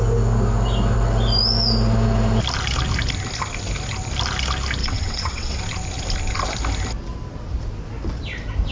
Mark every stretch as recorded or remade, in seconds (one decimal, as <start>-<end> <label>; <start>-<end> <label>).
0.0-4.8 recorded; 4.8-5.6 remade; 5.6-8.7 recorded